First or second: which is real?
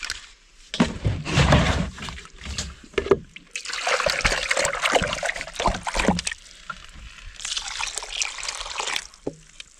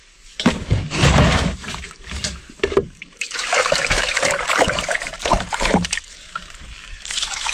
first